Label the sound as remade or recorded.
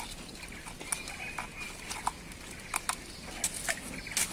recorded